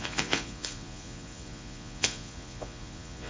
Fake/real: fake